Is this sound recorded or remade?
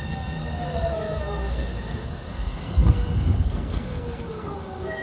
remade